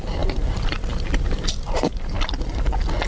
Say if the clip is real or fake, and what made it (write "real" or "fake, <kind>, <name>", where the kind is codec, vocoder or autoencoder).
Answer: real